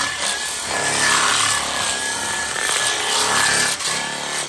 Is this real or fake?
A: real